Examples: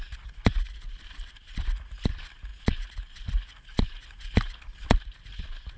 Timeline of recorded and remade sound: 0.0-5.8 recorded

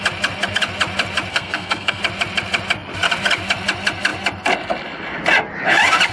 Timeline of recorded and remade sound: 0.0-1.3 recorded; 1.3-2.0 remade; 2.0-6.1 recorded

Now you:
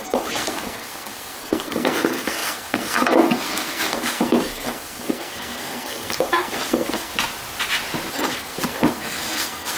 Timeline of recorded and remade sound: 0.0-7.1 remade; 7.1-8.1 recorded; 8.1-9.8 remade

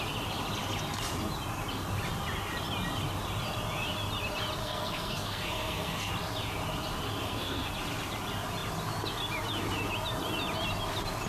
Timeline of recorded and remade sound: 0.0-4.6 recorded; 4.6-6.1 remade; 6.1-7.2 recorded; 7.2-7.7 remade; 7.7-11.3 recorded